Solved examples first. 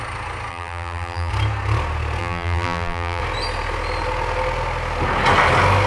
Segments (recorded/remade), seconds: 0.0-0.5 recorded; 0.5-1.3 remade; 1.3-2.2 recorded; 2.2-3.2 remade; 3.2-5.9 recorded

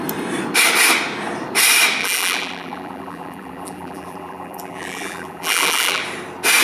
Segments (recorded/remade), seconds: 0.0-2.0 recorded; 2.0-6.0 remade; 6.0-6.6 recorded

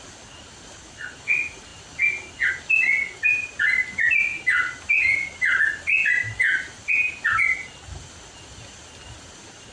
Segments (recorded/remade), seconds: 0.0-9.7 recorded

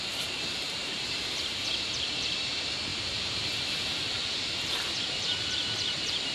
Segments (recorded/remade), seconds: 0.0-6.3 remade

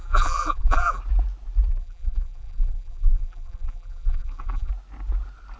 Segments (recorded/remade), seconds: 0.0-1.0 remade; 1.0-1.7 recorded; 1.7-4.7 remade; 4.7-5.6 recorded

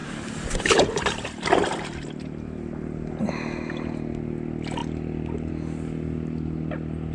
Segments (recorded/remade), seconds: 0.0-7.1 recorded

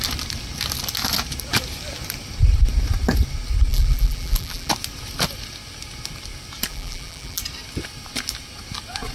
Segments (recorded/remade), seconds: 0.0-3.7 recorded; 3.7-4.7 remade; 4.7-6.7 recorded; 6.7-7.4 remade; 7.4-9.1 recorded